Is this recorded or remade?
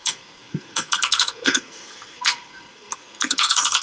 remade